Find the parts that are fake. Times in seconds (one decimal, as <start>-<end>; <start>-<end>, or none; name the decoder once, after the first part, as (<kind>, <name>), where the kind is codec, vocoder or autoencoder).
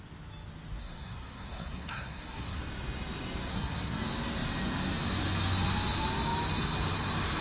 0.8-2.6 (codec, SNAC); 3.5-4.0